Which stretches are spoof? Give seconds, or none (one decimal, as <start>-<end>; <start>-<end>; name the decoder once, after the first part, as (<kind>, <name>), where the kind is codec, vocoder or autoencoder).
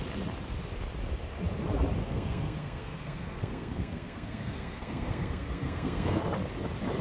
2.0-6.2 (codec, SNAC)